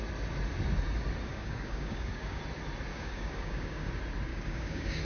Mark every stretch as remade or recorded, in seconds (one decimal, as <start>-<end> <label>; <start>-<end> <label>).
0.0-1.3 recorded; 1.3-2.4 remade; 2.4-2.9 recorded; 2.9-3.9 remade; 3.9-4.3 recorded; 4.3-5.0 remade